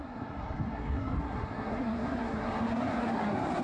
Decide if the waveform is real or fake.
fake